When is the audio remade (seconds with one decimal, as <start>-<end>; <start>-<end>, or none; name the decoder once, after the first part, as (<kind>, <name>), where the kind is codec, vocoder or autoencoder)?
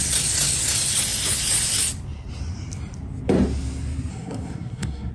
4.1-5.1 (codec, SNAC)